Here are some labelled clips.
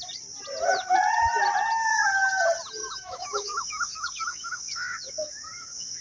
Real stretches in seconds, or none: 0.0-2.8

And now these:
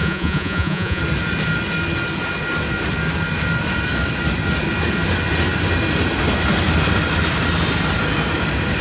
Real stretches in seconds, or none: 1.0-8.8

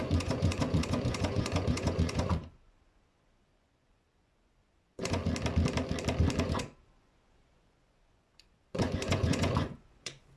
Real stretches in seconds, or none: 5.2-6.4

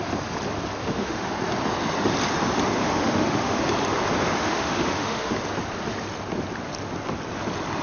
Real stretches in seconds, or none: 0.0-0.8; 1.3-2.9; 3.6-4.4; 5.3-7.8

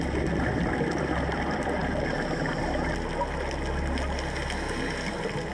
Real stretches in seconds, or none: 0.0-5.5

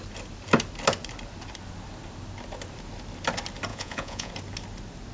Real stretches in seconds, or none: 0.0-3.7; 4.3-5.1

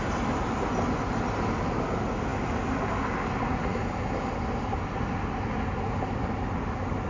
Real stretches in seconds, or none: 0.0-7.1

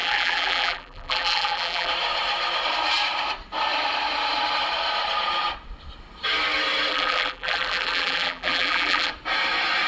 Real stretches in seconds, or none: 1.9-6.9; 9.1-9.9